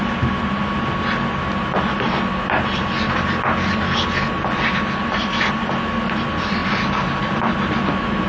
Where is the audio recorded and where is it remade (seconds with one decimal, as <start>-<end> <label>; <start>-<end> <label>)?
0.0-8.3 recorded